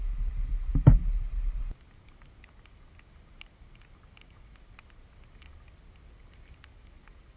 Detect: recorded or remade recorded